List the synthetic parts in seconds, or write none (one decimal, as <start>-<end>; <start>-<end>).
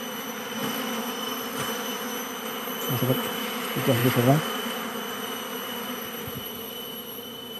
none